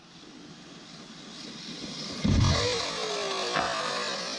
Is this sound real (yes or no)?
yes